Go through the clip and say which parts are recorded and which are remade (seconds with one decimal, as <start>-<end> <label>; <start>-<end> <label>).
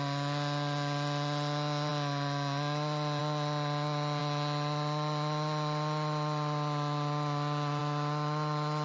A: 0.0-8.8 recorded